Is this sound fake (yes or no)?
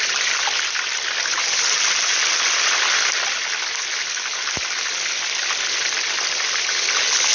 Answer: no